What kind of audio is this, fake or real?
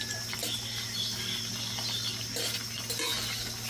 real